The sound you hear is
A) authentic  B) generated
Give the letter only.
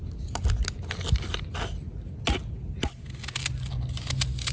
A